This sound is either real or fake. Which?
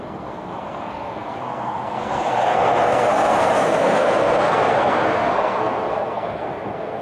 fake